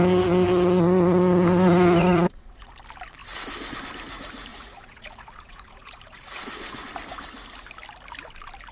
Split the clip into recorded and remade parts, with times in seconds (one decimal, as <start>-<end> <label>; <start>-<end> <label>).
0.0-2.0 recorded; 2.0-2.7 remade; 2.7-4.5 recorded; 4.5-6.9 remade; 6.9-8.7 recorded